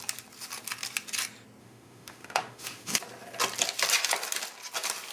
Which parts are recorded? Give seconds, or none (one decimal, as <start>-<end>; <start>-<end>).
0.0-1.6; 3.0-5.1